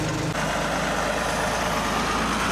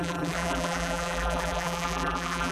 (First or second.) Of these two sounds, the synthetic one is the second